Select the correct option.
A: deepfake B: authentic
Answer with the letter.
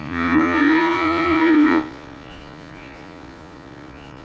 A